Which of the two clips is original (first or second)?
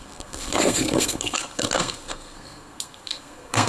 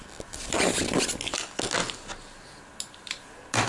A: second